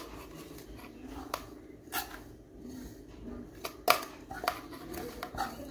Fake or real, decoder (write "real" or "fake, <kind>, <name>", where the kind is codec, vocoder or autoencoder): real